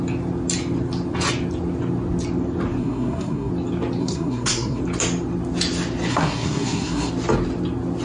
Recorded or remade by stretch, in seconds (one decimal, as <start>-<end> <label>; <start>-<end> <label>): 0.0-2.8 recorded; 2.8-3.5 remade; 3.5-4.0 recorded; 4.0-4.8 remade; 4.8-6.1 recorded; 6.1-7.1 remade; 7.1-8.0 recorded